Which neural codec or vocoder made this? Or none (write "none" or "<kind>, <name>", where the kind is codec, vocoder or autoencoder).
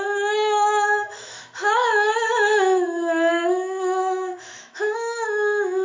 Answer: autoencoder, DAC-VAE